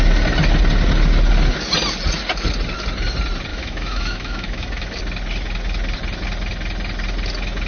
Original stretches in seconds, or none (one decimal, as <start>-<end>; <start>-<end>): 0.0-3.5; 5.0-7.7